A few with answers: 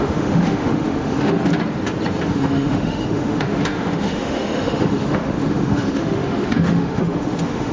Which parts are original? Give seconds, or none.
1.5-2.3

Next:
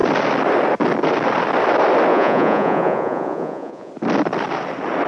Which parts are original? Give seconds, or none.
0.0-2.1; 3.9-5.1

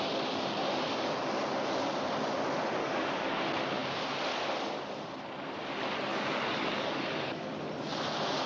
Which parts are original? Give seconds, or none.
0.0-2.8; 3.4-6.1; 7.5-8.5

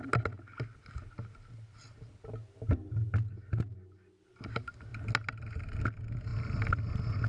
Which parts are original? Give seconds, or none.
0.0-7.3

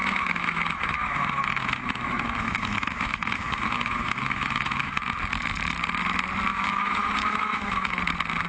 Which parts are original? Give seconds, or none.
4.9-6.5; 7.9-8.5

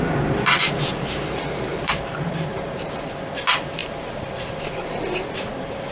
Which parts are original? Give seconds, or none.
none

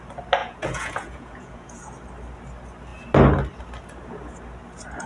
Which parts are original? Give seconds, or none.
0.0-0.4; 1.9-5.1

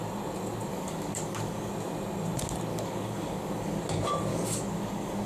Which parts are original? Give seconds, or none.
0.0-0.7; 1.7-2.7; 3.8-4.3